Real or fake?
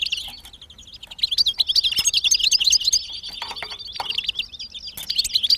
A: real